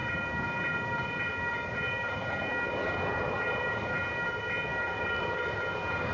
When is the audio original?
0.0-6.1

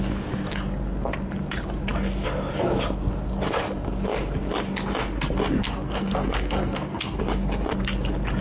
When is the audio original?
0.0-5.6; 7.2-8.4

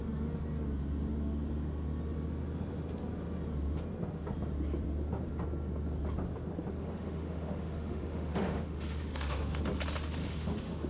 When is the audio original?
0.0-6.8; 9.6-10.2

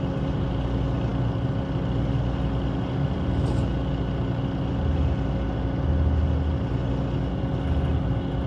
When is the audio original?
0.0-8.5

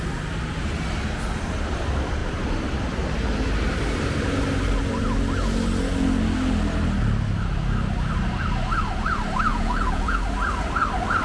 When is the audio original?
0.0-9.5; 10.2-11.2

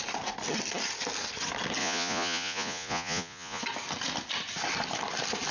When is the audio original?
0.0-1.8; 3.6-5.5

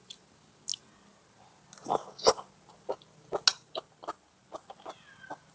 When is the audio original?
0.0-5.5

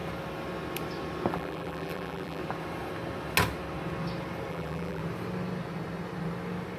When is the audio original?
0.0-1.3; 2.4-4.5; 5.0-6.8